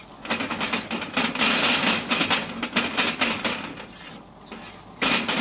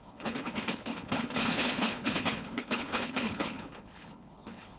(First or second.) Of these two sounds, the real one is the first